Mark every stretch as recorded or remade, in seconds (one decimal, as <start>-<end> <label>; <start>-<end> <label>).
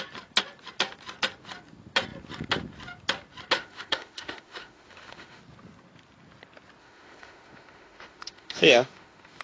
0.0-3.6 recorded; 3.6-5.4 remade; 5.4-6.8 recorded; 6.8-9.4 remade